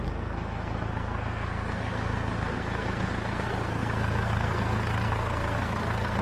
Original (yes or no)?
no